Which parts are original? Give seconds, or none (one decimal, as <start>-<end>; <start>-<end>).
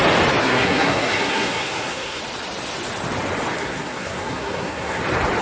0.0-0.4; 2.2-3.6; 5.0-5.4